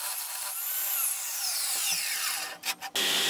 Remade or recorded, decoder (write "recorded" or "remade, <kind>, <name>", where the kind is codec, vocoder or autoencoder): recorded